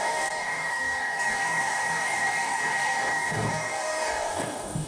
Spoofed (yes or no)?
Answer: yes